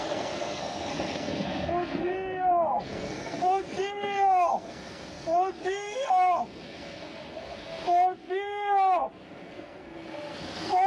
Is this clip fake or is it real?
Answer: fake